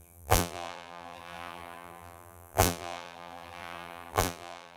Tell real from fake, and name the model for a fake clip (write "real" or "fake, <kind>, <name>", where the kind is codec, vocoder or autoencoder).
fake, vocoder, BigVGAN v2